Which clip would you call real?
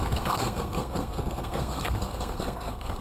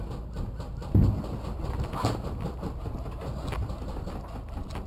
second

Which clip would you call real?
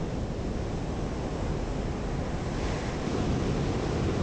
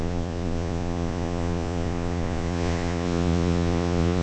first